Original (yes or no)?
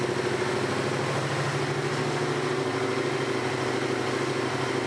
yes